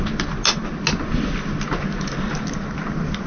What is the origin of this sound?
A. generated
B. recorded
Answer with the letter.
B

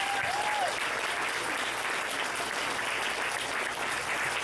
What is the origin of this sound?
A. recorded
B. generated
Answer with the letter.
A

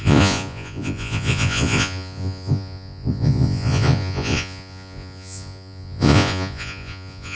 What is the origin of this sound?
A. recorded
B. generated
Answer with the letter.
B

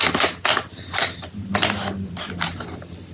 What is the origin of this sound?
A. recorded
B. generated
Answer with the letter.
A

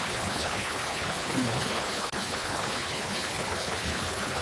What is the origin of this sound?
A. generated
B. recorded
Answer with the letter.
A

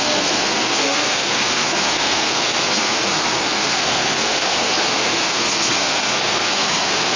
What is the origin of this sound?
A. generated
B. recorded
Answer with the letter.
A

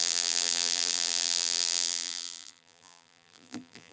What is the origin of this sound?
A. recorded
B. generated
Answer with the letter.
B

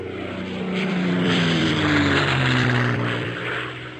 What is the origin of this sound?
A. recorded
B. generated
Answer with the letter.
B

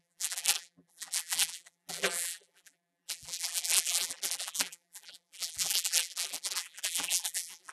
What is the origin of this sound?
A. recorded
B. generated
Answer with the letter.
B